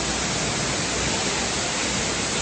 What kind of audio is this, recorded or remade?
recorded